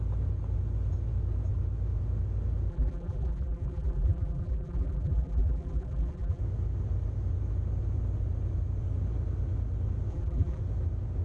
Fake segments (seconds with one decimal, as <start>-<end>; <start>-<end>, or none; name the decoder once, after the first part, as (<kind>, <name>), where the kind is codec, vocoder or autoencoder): 2.7-6.4 (vocoder, BigVGAN v2); 10.1-10.6